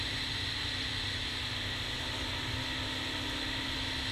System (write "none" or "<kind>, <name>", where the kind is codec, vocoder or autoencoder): none